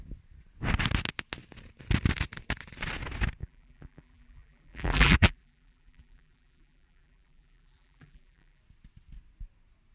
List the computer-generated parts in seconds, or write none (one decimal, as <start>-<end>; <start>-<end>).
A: 3.4-8.6